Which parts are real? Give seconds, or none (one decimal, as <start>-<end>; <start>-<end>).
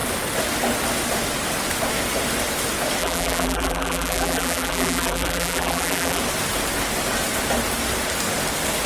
0.0-3.0; 6.2-8.9